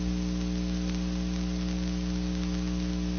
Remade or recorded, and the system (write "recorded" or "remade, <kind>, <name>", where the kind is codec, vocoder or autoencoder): recorded